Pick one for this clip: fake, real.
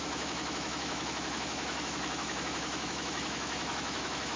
fake